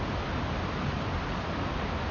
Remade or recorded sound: recorded